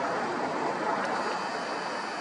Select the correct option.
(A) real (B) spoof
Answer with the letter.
B